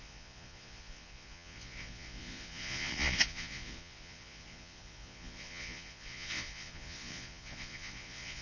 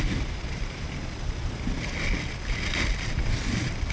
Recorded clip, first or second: second